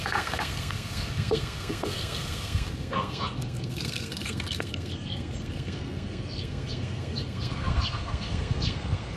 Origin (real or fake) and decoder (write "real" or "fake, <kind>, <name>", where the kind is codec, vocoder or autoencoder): fake, codec, SNAC